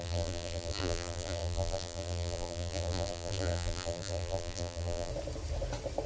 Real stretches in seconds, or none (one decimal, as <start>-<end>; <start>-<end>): 5.1-6.1